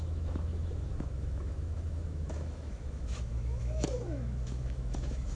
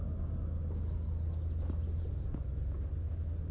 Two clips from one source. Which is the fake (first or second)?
first